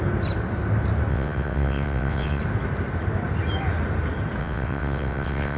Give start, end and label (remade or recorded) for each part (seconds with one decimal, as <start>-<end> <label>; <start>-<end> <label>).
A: 0.0-1.1 recorded; 1.1-2.4 remade; 2.4-4.4 recorded; 4.4-5.6 remade